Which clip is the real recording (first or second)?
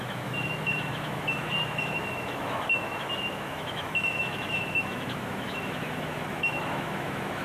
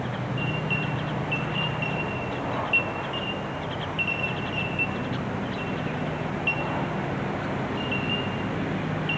second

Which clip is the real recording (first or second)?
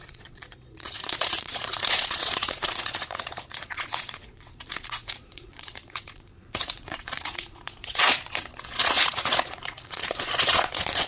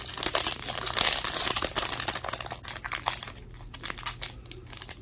second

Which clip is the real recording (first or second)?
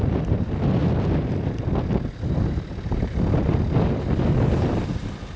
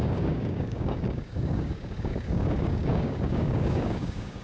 first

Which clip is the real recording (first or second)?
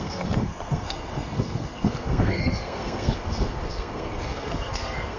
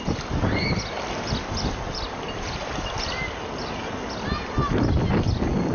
second